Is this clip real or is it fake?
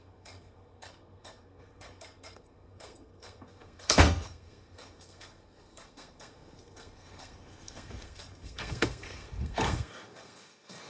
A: fake